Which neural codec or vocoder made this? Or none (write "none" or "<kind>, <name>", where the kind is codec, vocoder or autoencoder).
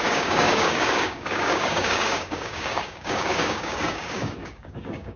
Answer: codec, DAC